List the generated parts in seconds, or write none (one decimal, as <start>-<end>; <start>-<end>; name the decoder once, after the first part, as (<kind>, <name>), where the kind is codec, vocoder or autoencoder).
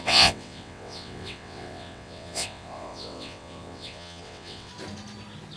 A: 0.0-4.7 (vocoder, WaveNeXt)